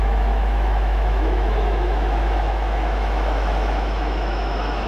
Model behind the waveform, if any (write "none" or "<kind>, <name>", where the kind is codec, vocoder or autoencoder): autoencoder, DAC-VAE